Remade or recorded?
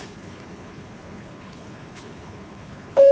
remade